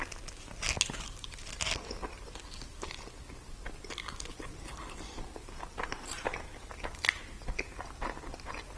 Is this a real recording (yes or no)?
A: yes